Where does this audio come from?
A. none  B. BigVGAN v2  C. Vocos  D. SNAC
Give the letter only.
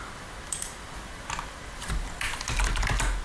B